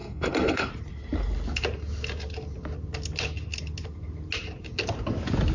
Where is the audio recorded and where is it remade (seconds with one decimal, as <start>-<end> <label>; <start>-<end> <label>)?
0.0-0.7 remade; 0.7-5.5 recorded